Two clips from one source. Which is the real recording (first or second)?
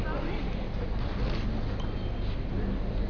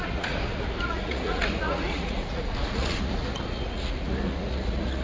first